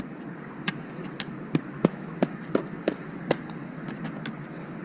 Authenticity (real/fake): real